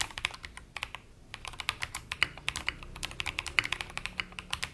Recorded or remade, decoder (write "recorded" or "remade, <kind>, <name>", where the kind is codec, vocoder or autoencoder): recorded